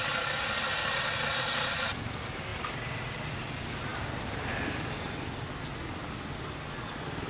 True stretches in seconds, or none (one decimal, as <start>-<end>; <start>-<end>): 0.0-1.3; 1.9-7.3